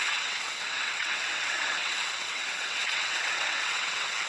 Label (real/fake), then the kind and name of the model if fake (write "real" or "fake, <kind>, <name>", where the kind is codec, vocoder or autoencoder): fake, vocoder, WaveNeXt